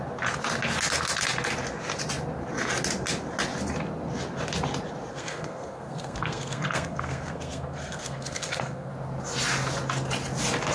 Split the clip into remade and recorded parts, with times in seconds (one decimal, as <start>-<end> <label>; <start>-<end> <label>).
0.0-5.1 recorded; 5.1-8.9 remade; 8.9-10.7 recorded